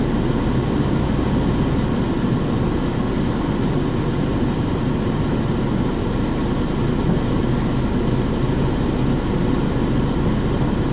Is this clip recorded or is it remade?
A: recorded